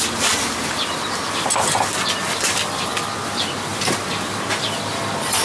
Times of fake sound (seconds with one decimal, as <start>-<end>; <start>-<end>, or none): none